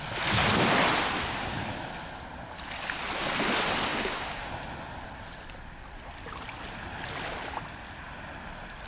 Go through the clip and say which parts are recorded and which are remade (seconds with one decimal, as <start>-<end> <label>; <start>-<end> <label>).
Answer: 0.0-3.9 recorded; 3.9-4.5 remade; 4.5-8.9 recorded